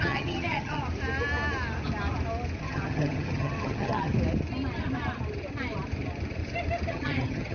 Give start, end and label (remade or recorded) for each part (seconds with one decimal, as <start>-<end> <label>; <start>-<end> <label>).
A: 0.0-0.8 remade; 0.8-2.6 recorded; 2.6-4.1 remade; 4.1-6.9 recorded; 6.9-7.5 remade